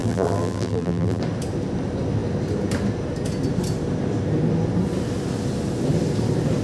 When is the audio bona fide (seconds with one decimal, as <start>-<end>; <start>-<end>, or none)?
1.2-6.6